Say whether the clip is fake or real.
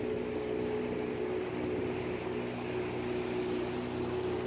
real